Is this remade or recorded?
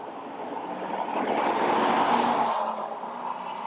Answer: recorded